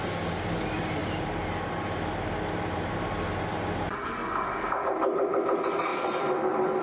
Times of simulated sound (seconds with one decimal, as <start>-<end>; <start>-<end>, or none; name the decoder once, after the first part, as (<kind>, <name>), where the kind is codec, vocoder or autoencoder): none